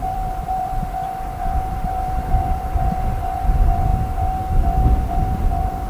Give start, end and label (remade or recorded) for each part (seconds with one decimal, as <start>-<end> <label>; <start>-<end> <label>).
0.0-3.9 remade; 3.9-5.1 recorded; 5.1-5.9 remade